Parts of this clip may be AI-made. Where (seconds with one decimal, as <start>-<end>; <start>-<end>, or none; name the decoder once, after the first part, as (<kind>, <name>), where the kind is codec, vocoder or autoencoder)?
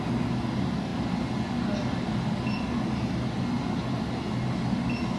none